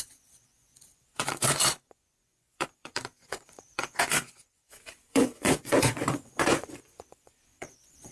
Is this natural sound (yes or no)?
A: no